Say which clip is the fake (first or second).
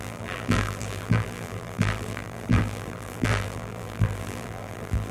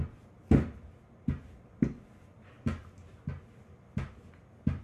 first